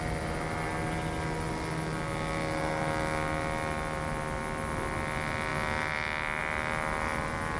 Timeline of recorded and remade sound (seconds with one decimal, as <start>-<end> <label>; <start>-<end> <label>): 0.0-7.6 recorded